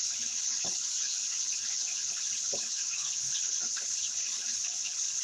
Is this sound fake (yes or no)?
yes